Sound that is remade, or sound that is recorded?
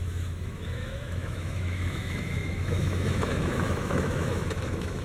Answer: remade